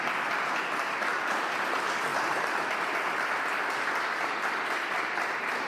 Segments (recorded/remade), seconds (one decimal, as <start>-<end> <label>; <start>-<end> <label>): 0.0-5.7 recorded